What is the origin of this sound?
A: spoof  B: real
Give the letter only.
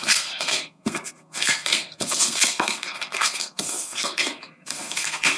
A